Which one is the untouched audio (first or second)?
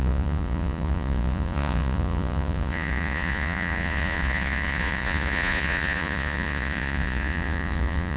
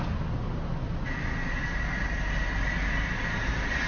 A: second